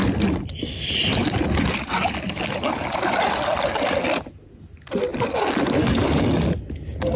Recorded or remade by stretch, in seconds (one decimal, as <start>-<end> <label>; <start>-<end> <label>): 0.0-4.0 remade; 4.0-7.2 recorded